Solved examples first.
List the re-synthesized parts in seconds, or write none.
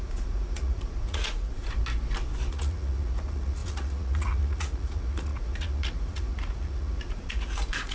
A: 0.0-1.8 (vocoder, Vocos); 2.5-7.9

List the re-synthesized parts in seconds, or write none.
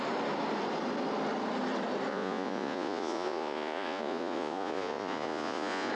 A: 2.1-5.9 (vocoder, Vocos)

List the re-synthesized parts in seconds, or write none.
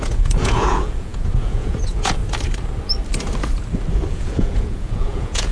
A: 0.0-2.2 (vocoder, Vocos); 4.1-5.5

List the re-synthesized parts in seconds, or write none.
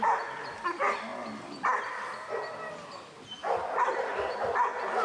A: none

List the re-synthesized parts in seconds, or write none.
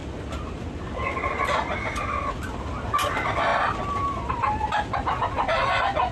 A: none